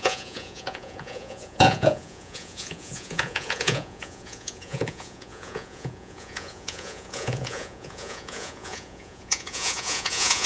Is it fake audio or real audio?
fake